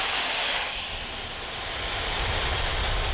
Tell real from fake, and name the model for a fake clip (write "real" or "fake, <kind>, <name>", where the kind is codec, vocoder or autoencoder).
real